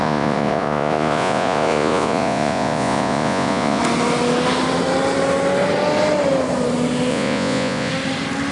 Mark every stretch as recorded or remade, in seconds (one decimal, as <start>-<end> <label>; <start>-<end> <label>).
0.0-3.8 remade; 3.8-7.1 recorded; 7.1-7.9 remade; 7.9-8.5 recorded